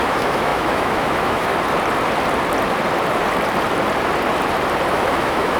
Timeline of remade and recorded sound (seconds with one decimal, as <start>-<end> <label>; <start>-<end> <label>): 0.0-1.5 remade; 1.5-4.9 recorded; 4.9-5.6 remade